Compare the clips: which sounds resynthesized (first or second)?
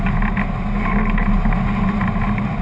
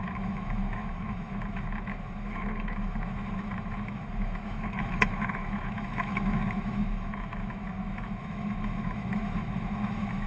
second